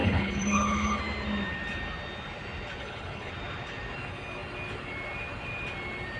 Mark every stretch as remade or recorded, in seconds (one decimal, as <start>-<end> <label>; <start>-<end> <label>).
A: 0.0-1.0 remade; 1.0-2.8 recorded; 2.8-3.3 remade; 3.3-6.2 recorded